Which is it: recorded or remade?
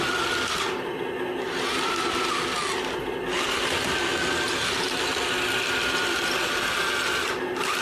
recorded